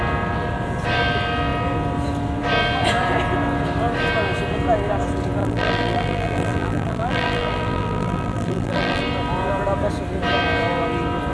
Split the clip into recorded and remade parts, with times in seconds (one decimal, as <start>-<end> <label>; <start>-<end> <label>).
0.0-5.4 recorded; 5.4-9.0 remade; 9.0-11.3 recorded